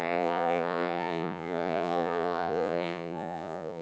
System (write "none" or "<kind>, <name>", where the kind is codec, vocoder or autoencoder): vocoder, Vocos